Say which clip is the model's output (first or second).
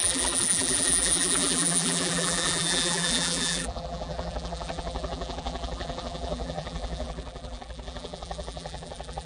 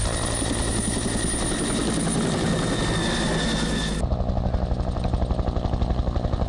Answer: first